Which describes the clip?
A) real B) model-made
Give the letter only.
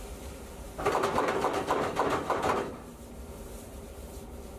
B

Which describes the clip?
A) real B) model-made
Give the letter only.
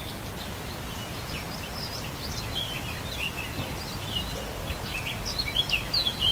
A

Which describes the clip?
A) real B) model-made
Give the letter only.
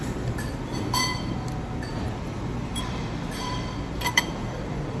B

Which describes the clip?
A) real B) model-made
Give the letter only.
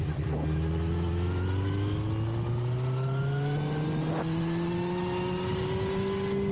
A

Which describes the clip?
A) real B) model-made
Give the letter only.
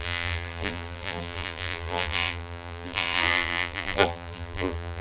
B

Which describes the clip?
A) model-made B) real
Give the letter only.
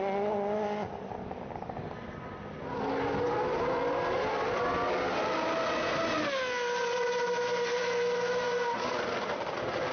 B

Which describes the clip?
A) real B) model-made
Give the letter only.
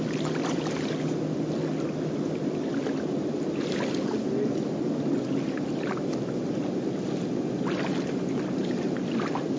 A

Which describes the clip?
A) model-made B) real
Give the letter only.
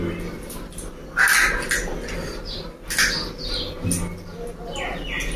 B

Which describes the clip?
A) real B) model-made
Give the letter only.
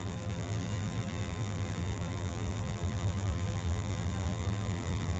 B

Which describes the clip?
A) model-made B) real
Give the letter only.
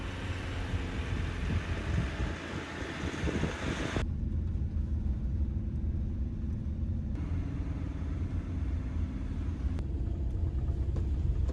B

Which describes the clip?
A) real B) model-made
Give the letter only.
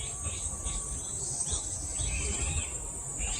B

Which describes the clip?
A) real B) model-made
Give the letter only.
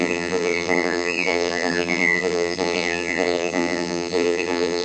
B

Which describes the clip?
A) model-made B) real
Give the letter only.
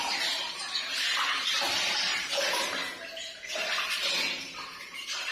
A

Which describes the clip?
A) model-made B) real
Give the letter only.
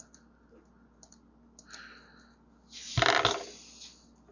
B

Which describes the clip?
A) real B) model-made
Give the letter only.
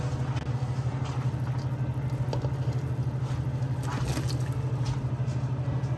A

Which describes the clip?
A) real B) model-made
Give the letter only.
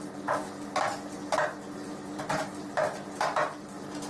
A